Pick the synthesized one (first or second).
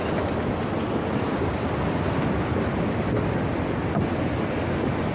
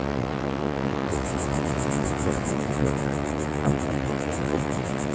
second